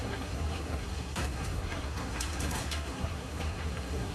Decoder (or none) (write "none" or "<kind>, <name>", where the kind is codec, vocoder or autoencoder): codec, SNAC